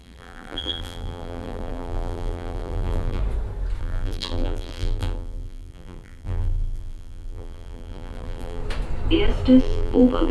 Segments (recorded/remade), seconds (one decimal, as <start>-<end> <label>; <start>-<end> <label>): 0.0-3.2 remade; 3.2-3.8 recorded; 3.8-8.6 remade; 8.6-9.6 recorded; 9.6-10.3 remade